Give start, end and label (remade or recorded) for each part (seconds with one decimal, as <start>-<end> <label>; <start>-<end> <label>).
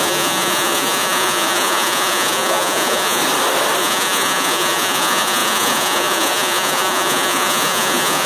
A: 0.0-3.2 remade; 3.2-3.8 recorded; 3.8-8.3 remade